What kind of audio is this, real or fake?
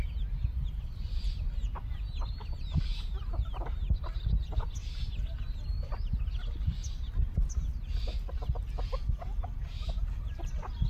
real